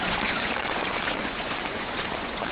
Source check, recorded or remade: remade